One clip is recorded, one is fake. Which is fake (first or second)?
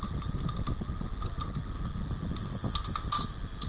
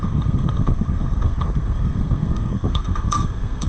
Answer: second